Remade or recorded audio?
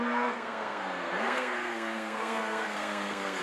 remade